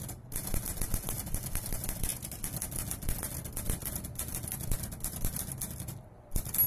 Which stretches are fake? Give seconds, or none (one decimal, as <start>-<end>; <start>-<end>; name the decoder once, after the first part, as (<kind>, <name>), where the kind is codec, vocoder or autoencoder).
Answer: none